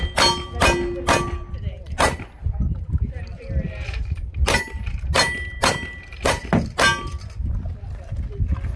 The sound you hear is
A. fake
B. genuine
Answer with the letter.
B